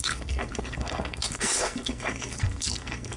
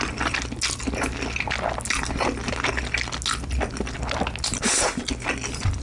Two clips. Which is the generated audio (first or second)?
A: first